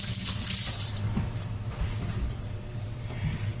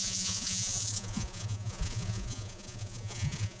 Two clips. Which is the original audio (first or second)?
first